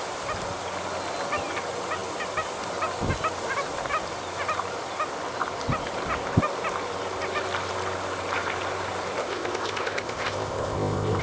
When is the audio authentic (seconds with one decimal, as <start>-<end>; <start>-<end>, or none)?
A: 0.0-9.2